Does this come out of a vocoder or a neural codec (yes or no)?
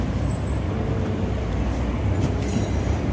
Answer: yes